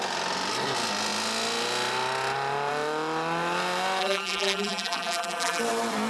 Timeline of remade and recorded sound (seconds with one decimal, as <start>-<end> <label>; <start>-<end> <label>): 0.0-4.0 recorded; 4.0-5.6 remade; 5.6-6.1 recorded